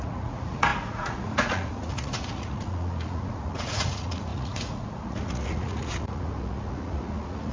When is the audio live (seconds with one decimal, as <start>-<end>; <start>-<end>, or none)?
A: none